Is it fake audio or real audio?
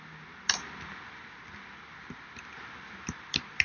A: fake